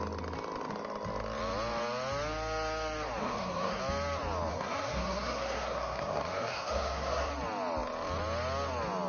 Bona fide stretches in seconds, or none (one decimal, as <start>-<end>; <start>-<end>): 0.0-3.2; 3.8-4.5; 7.3-9.1